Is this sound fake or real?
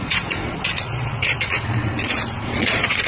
fake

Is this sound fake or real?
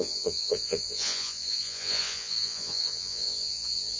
fake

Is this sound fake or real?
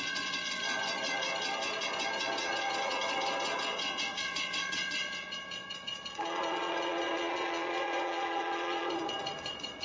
fake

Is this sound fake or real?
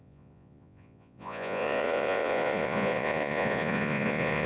fake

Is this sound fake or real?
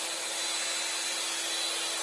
real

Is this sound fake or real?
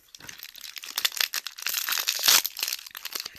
real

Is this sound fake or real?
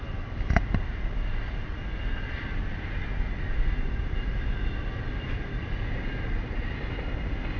real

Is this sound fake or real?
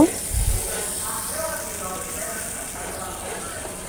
real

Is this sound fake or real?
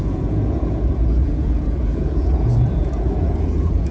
fake